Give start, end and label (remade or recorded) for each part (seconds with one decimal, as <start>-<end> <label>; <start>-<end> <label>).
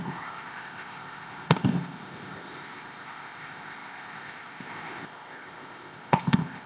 0.0-6.7 remade